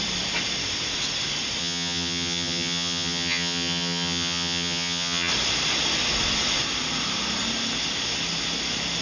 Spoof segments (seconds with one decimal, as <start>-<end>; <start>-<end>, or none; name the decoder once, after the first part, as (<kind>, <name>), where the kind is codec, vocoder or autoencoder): 1.6-5.3 (vocoder, HiFi-GAN)